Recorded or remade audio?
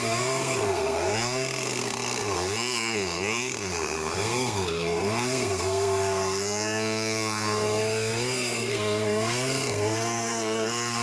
remade